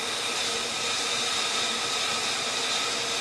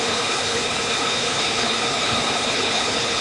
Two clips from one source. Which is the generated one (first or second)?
second